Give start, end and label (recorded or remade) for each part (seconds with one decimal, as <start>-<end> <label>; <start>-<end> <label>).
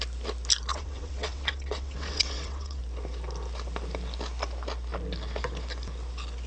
0.0-0.7 recorded; 0.7-2.8 remade; 2.8-6.5 recorded